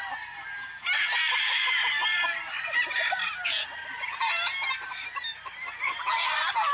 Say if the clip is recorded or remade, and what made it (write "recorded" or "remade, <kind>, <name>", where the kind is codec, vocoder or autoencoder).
recorded